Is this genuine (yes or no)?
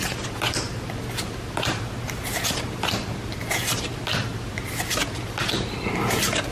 yes